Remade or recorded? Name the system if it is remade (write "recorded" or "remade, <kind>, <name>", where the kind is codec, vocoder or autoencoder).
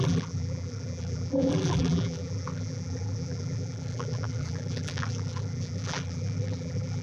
remade, vocoder, BigVGAN v2